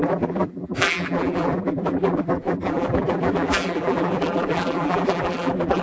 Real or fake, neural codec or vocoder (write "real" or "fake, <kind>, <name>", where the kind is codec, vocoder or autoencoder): fake, vocoder, BigVGAN v2